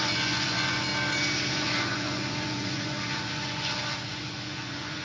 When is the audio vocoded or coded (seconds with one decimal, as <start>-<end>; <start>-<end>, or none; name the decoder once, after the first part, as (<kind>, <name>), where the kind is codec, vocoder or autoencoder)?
0.0-0.9 (vocoder, Vocos); 1.5-5.0